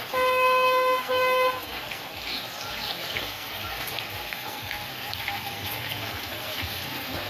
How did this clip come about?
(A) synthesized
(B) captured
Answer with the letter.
A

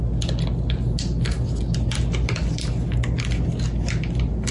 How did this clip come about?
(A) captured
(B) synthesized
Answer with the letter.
A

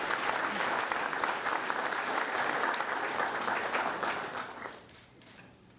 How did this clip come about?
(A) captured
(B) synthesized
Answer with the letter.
A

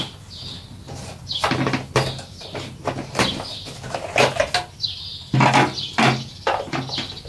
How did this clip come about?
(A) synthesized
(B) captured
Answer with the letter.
B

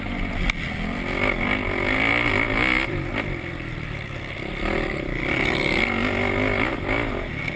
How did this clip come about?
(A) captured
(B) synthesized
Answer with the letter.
A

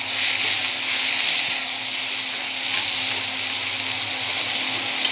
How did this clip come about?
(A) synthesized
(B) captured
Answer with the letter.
B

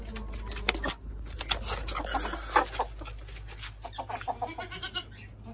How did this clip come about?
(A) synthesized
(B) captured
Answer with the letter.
B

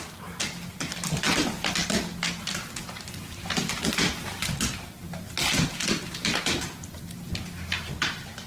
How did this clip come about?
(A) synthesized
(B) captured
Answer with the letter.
B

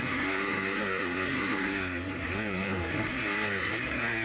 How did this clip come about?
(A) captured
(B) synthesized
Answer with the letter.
B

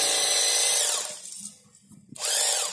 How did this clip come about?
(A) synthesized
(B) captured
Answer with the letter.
B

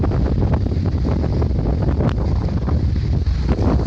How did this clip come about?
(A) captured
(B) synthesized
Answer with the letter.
A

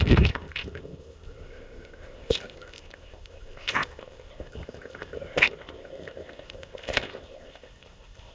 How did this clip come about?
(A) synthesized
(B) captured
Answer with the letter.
A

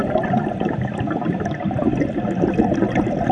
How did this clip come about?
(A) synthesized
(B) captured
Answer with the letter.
B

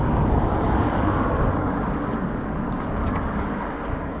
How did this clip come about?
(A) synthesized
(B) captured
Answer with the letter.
A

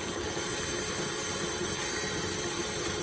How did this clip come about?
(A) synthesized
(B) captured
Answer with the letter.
B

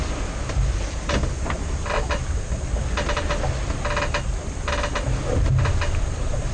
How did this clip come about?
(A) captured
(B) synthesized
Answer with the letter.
A